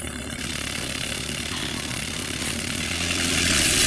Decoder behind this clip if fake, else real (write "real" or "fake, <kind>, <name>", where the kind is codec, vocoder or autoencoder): fake, vocoder, Vocos